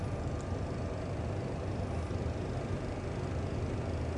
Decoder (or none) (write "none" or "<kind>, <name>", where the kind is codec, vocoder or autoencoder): none